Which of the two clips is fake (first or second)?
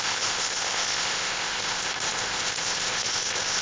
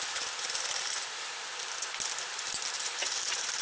first